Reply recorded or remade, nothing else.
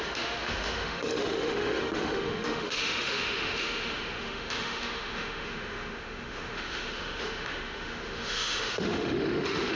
remade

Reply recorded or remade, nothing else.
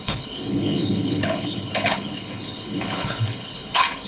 remade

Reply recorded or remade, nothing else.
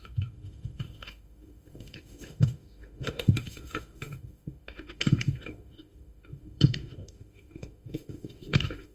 remade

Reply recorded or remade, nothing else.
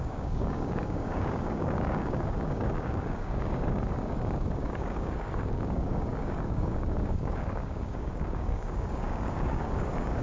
remade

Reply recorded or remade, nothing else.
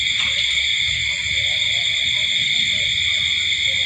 recorded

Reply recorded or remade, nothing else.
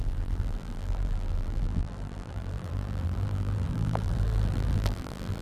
remade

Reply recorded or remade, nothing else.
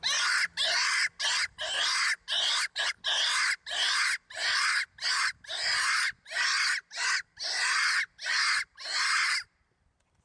recorded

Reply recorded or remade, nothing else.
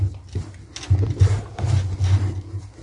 recorded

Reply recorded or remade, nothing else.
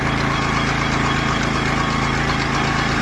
recorded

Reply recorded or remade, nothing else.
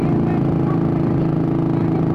recorded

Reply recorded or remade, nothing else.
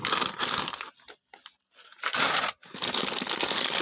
recorded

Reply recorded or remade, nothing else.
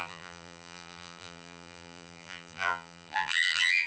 remade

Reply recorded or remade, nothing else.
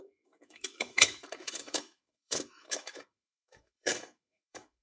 remade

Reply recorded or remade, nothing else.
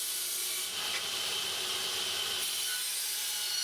recorded